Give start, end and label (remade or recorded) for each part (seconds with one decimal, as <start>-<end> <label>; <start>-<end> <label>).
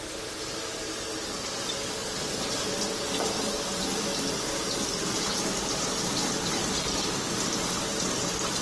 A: 0.0-8.6 recorded